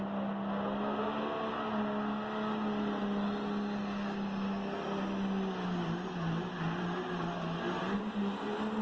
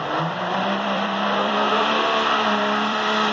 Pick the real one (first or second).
first